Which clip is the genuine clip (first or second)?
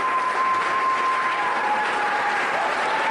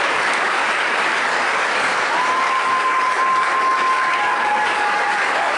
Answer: first